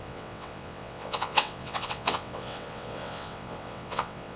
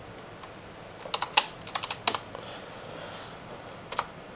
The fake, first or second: first